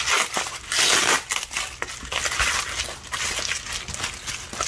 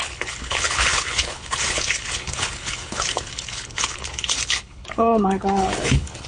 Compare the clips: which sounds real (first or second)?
first